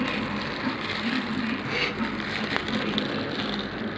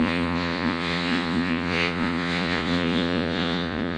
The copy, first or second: second